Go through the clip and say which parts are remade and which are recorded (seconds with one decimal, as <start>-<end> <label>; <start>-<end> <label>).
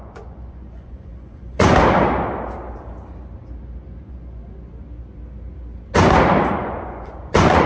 0.0-1.7 remade; 1.7-4.0 recorded; 4.0-4.4 remade; 4.4-6.5 recorded; 6.5-7.7 remade